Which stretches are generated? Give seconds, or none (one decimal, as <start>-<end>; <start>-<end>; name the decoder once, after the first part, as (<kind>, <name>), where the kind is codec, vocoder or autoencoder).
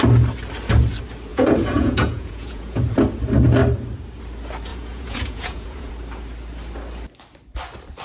1.3-2.8 (vocoder, Vocos); 4.7-5.9